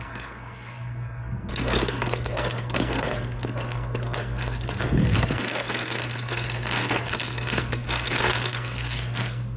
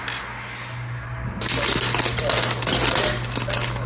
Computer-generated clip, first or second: first